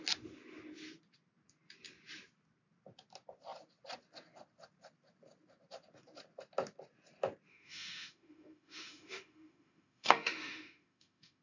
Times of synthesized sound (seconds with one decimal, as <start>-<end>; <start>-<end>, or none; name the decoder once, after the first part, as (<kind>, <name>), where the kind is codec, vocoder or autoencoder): 7.5-11.4 (autoencoder, DAC-VAE)